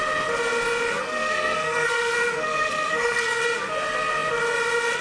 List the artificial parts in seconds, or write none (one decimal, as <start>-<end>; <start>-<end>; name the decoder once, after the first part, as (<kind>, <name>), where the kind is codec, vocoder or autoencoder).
1.0-3.4 (codec, SNAC)